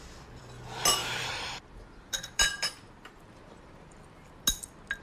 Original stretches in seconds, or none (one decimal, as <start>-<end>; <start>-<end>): 0.0-1.0; 4.0-5.0